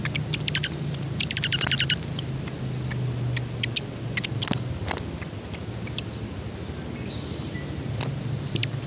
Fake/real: real